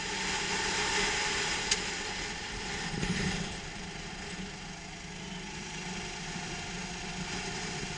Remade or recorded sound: recorded